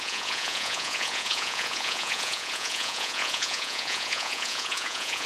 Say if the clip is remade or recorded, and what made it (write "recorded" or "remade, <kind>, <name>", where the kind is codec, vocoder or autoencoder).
remade, vocoder, Vocos